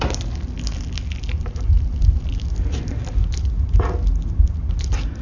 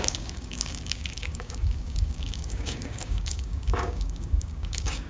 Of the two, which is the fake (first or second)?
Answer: second